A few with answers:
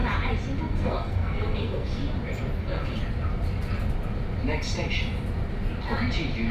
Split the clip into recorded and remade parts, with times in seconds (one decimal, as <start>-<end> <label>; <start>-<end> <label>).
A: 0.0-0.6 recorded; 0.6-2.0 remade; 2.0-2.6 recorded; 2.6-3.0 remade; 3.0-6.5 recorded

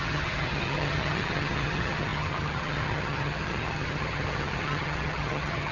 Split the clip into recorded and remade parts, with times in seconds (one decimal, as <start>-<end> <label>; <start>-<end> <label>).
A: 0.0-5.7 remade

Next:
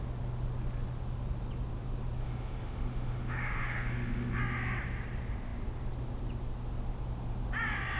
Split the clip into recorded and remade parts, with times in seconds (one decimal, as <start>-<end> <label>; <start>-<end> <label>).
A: 0.0-2.2 recorded; 2.2-4.4 remade; 4.4-8.0 recorded

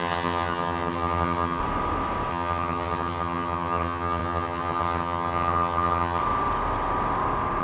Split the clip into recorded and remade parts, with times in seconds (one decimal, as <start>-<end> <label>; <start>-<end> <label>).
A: 0.0-1.6 remade; 1.6-2.3 recorded; 2.3-6.2 remade; 6.2-7.6 recorded